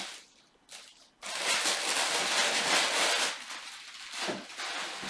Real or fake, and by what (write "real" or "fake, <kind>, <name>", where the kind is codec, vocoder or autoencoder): real